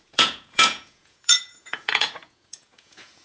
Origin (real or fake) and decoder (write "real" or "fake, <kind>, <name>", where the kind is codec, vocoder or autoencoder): fake, vocoder, Vocos